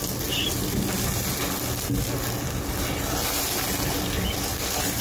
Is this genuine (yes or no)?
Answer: yes